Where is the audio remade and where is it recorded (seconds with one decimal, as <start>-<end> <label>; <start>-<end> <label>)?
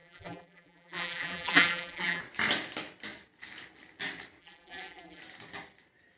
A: 0.0-2.2 remade; 2.2-4.4 recorded; 4.4-5.2 remade; 5.2-6.2 recorded